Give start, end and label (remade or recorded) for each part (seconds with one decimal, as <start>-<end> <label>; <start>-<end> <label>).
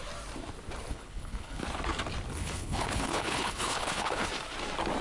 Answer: 0.0-0.9 recorded; 0.9-1.6 remade; 1.6-2.4 recorded; 2.4-4.3 remade; 4.3-5.0 recorded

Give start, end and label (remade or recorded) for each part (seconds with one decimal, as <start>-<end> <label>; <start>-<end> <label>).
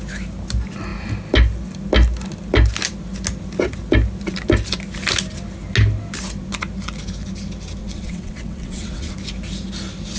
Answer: 0.0-7.8 recorded; 7.8-9.1 remade; 9.1-10.2 recorded